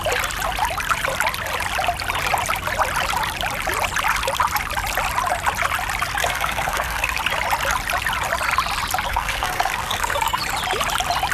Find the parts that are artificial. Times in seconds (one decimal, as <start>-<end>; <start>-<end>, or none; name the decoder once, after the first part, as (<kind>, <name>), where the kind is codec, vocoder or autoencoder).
6.2-7.2 (codec, SNAC); 9.1-10.4